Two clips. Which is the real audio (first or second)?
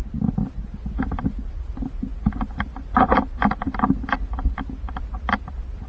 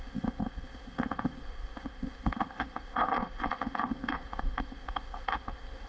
first